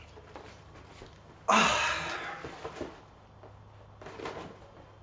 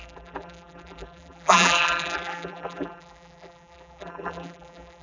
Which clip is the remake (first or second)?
second